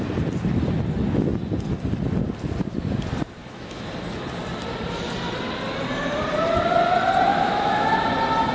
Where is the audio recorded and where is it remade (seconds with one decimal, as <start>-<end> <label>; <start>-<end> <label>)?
0.0-3.4 recorded; 3.4-3.9 remade; 3.9-7.3 recorded; 7.3-7.9 remade; 7.9-8.5 recorded